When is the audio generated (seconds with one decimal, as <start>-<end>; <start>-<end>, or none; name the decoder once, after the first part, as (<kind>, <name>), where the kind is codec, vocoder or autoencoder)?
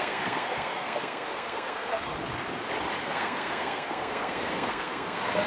0.0-2.1 (codec, SNAC); 3.0-5.5